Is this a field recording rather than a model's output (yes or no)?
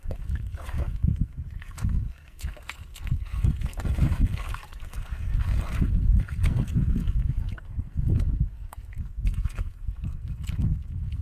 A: no